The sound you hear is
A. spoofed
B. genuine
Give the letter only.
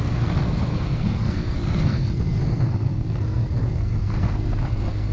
A